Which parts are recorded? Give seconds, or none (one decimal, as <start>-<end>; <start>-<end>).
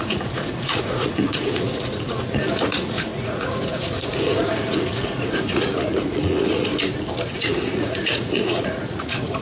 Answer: 6.7-7.3